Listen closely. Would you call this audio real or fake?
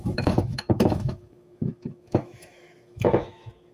fake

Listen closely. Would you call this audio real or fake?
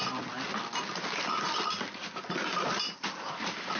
real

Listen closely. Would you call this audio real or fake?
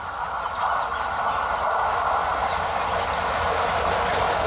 real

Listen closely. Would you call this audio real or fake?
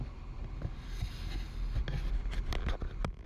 real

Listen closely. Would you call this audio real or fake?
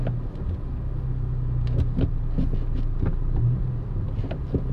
real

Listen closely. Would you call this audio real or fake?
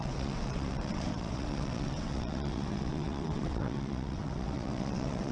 fake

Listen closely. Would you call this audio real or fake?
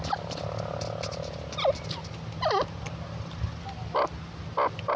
real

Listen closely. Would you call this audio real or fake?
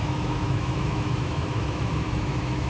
fake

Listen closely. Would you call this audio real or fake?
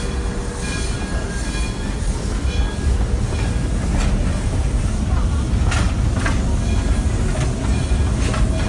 real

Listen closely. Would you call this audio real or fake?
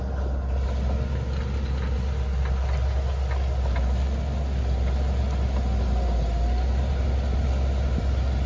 real